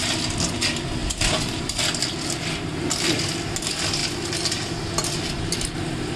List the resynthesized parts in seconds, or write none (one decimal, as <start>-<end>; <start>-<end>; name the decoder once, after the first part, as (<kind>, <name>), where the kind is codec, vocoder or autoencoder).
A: 1.0-1.8 (vocoder, BigVGAN v2)